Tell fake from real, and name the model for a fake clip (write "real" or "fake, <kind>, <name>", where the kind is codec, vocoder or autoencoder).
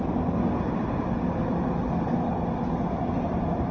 real